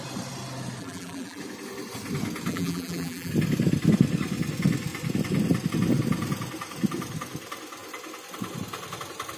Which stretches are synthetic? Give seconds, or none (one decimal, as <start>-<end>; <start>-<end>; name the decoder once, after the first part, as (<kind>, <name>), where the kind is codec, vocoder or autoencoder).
0.8-1.4 (vocoder, BigVGAN v2); 2.5-3.3